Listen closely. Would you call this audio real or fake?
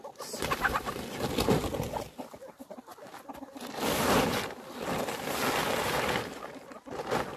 real